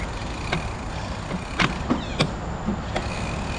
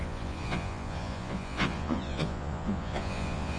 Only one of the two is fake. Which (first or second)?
second